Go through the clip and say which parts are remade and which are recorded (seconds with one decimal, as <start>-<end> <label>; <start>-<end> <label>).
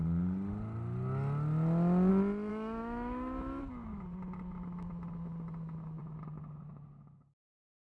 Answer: 0.0-2.5 recorded; 2.5-3.6 remade; 3.6-7.9 recorded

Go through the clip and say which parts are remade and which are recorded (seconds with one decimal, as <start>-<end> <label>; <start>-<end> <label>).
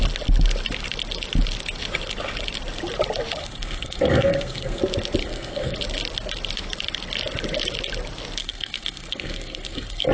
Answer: 0.0-3.4 recorded; 3.4-4.8 remade; 4.8-5.2 recorded; 5.2-5.8 remade; 5.8-8.4 recorded; 8.4-10.1 remade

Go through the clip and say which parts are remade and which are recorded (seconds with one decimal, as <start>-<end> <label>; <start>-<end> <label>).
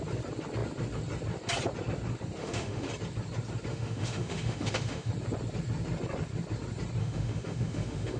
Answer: 0.0-2.4 recorded; 2.4-2.9 remade; 2.9-3.7 recorded; 3.7-5.1 remade; 5.1-7.0 recorded; 7.0-8.2 remade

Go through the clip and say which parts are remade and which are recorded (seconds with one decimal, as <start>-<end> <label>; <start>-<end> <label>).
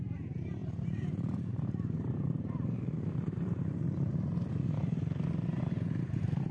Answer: 0.0-4.8 remade; 4.8-5.6 recorded; 5.6-6.5 remade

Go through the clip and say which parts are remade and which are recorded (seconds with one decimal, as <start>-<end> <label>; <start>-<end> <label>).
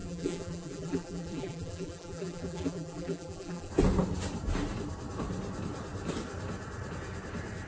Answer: 0.0-3.7 remade; 3.7-7.7 recorded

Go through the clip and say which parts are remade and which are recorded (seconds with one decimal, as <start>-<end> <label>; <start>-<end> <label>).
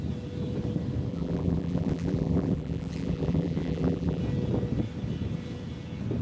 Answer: 0.0-1.1 recorded; 1.1-4.2 remade; 4.2-6.2 recorded